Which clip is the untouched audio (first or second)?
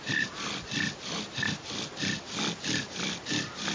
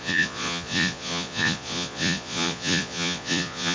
first